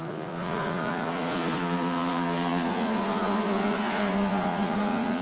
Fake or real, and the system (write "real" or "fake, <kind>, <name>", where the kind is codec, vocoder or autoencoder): fake, vocoder, Vocos